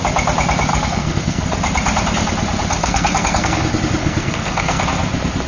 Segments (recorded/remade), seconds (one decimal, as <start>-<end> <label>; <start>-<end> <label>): 0.0-0.7 recorded; 0.7-1.4 remade; 1.4-2.8 recorded; 2.8-3.6 remade; 3.6-4.0 recorded; 4.0-4.8 remade; 4.8-5.5 recorded